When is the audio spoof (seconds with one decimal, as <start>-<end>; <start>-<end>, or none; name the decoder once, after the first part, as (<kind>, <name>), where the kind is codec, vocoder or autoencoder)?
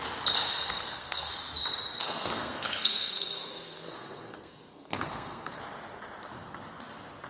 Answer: 0.4-1.3 (codec, SNAC); 2.0-5.6